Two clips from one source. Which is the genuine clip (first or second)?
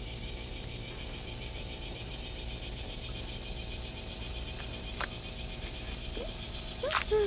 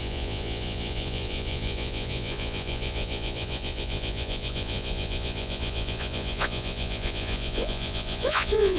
first